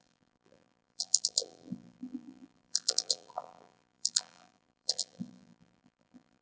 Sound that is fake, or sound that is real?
fake